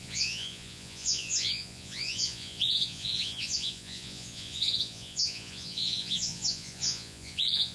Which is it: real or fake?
fake